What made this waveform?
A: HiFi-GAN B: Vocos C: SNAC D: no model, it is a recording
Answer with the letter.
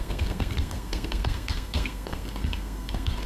C